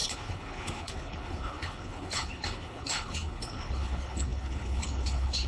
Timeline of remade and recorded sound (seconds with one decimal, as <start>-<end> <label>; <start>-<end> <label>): 0.0-5.5 remade